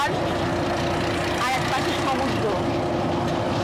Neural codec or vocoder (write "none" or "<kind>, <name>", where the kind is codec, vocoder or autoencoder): vocoder, BigVGAN v2